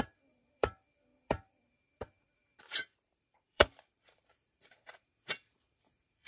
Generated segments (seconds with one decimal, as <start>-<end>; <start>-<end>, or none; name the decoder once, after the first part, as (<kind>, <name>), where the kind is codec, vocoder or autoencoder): 0.0-6.3 (vocoder, BigVGAN v2)

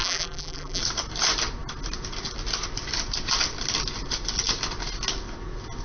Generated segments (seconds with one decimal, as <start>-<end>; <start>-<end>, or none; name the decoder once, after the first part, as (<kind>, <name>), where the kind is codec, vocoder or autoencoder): 0.0-0.8 (vocoder, BigVGAN v2)

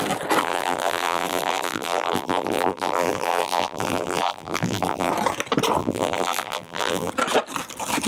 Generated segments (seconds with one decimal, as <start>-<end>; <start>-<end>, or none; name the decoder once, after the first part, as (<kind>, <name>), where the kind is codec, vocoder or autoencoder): 0.4-5.1 (vocoder, BigVGAN v2); 5.8-7.1

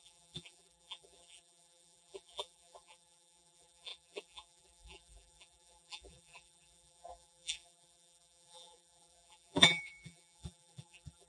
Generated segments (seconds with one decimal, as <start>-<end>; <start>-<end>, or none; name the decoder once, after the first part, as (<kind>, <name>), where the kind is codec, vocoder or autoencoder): 0.0-11.3 (vocoder, BigVGAN v2)

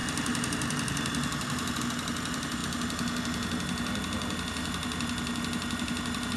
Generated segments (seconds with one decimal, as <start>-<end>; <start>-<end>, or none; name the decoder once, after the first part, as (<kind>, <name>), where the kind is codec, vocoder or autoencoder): 0.0-1.8 (vocoder, BigVGAN v2)

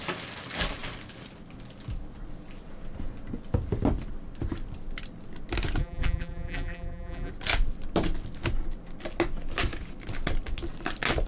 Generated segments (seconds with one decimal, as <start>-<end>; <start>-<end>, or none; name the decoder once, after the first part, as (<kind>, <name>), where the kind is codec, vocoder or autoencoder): 5.8-7.3 (vocoder, BigVGAN v2)